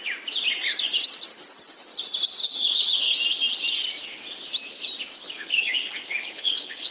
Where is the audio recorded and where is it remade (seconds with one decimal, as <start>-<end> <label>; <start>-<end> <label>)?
0.0-2.4 recorded; 2.4-3.2 remade; 3.2-5.2 recorded; 5.2-6.9 remade